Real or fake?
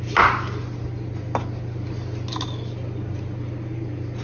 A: real